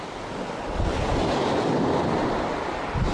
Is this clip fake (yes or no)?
no